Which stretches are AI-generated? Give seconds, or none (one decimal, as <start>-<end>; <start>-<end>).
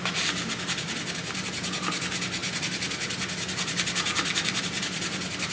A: none